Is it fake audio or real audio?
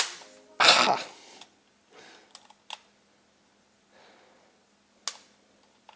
real